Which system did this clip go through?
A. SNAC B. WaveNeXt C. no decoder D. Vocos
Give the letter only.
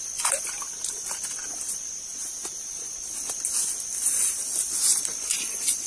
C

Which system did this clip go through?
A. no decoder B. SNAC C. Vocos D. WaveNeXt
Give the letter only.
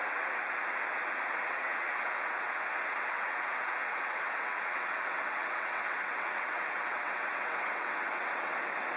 D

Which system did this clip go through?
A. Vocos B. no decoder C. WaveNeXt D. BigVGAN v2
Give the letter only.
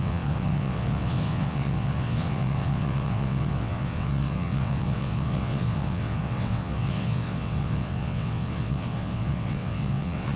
C